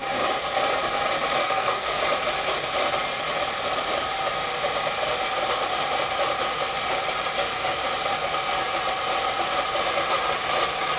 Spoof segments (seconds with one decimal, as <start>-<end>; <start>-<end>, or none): 1.4-2.0